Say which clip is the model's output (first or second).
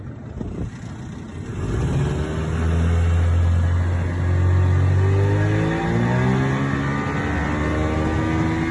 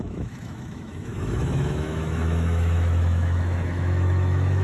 second